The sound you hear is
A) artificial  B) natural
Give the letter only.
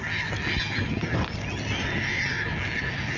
B